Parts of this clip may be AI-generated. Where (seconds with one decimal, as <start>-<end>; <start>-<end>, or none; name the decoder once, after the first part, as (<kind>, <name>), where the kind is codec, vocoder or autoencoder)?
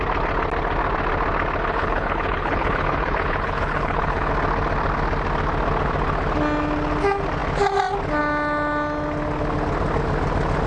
1.7-4.3 (codec, HILCodec)